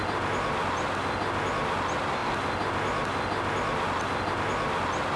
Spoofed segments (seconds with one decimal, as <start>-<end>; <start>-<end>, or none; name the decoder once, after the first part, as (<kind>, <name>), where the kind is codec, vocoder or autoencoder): none